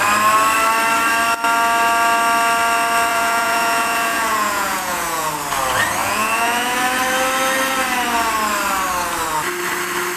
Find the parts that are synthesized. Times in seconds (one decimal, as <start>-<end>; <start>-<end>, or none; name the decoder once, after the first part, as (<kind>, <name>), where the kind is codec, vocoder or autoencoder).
3.1-5.3 (vocoder, Vocos); 6.0-6.8